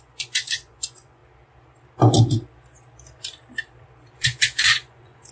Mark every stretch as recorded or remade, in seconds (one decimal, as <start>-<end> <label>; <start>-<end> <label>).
0.0-1.2 remade; 1.2-4.1 recorded; 4.1-5.3 remade